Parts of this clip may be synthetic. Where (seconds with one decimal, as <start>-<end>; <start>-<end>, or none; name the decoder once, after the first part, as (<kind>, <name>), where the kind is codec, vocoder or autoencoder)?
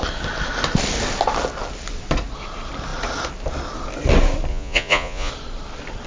4.5-5.3 (vocoder, Vocos)